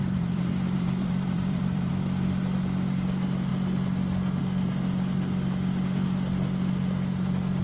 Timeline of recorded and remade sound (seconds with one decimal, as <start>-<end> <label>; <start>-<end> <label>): 0.0-1.9 remade; 1.9-7.6 recorded